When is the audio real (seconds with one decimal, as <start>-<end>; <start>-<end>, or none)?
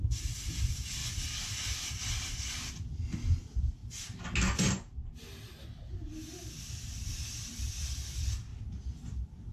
1.0-3.4; 3.8-6.6; 8.5-9.1